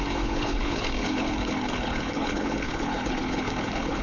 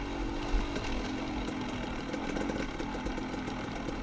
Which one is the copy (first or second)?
first